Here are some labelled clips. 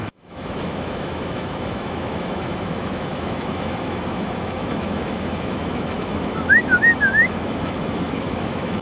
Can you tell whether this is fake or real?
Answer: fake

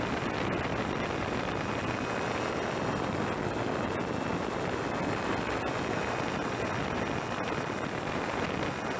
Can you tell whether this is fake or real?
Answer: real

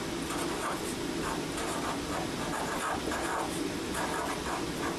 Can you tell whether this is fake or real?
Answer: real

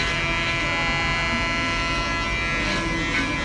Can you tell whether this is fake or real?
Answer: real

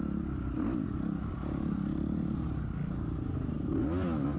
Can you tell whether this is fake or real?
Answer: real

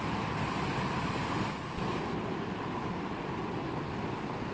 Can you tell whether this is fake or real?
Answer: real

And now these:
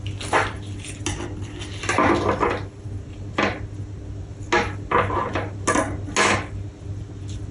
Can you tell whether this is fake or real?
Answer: real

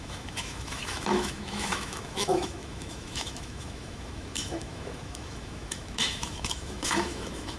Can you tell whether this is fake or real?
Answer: fake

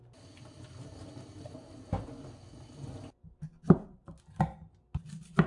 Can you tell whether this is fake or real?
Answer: real